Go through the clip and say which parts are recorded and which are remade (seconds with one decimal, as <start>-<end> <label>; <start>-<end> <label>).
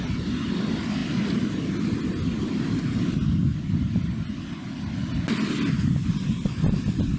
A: 0.0-7.2 recorded